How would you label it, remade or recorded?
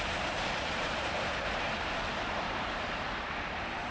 remade